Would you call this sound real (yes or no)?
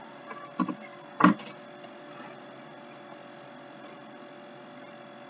yes